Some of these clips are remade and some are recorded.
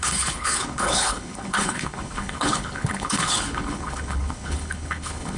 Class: remade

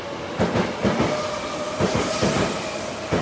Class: recorded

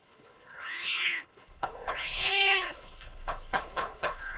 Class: remade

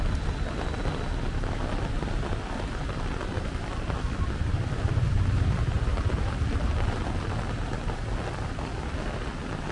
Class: recorded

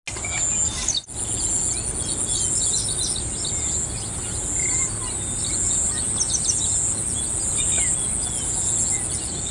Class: recorded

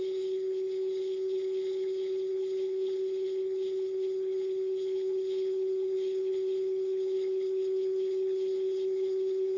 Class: remade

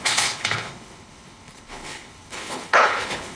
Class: remade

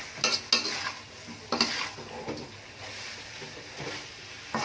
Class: recorded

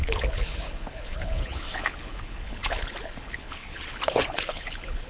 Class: remade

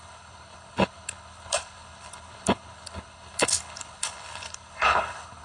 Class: remade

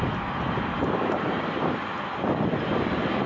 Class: recorded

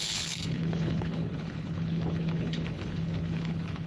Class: remade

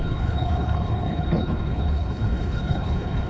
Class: remade